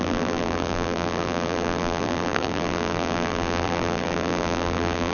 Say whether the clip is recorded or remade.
remade